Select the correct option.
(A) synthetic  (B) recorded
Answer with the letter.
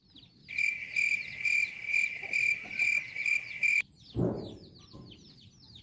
B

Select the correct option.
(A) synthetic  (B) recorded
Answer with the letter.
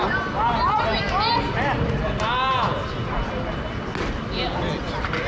B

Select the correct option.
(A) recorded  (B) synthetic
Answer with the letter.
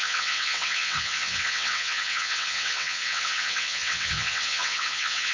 B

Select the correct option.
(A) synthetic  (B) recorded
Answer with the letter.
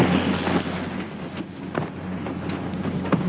B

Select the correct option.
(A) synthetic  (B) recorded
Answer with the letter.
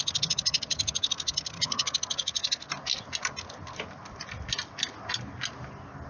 B